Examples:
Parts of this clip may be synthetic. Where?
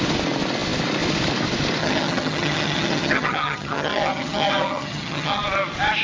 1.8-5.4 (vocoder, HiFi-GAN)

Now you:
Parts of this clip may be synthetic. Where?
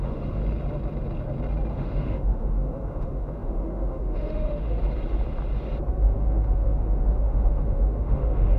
0.0-0.4 (autoencoder, DAC-VAE); 1.7-4.8; 5.9-8.6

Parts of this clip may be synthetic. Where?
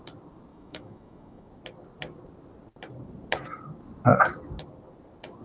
0.5-1.5 (autoencoder, DAC-VAE)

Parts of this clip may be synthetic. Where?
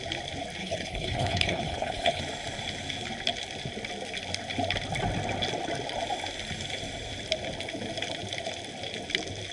0.6-2.2 (codec, HILCodec)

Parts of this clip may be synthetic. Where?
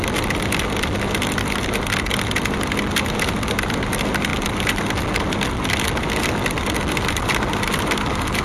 none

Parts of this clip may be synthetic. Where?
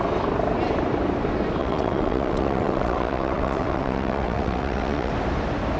1.6-5.1 (vocoder, WaveNeXt)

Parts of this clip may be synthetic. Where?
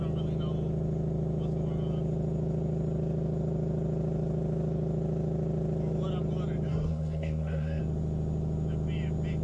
6.7-7.8 (codec, SNAC)